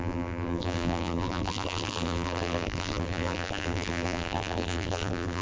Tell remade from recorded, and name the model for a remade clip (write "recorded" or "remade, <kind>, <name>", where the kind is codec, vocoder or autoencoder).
remade, vocoder, BigVGAN v2